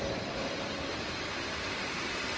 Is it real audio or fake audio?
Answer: fake